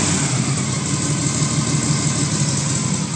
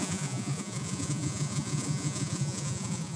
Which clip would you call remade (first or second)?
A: second